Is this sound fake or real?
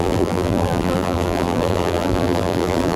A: fake